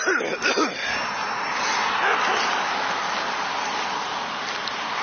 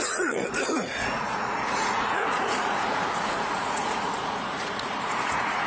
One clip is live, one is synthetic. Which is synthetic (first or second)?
second